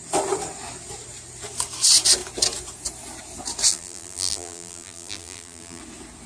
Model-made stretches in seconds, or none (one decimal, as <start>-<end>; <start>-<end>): 3.7-5.8